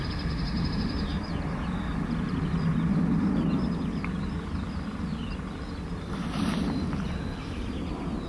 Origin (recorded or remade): recorded